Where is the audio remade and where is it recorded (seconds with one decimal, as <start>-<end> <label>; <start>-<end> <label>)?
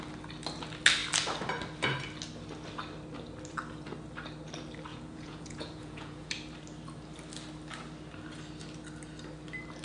0.0-4.9 recorded; 4.9-6.3 remade; 6.3-9.8 recorded